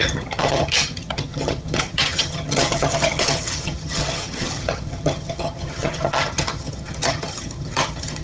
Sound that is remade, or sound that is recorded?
remade